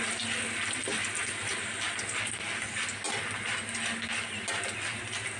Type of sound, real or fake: real